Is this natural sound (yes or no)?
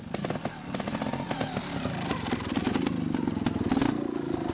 yes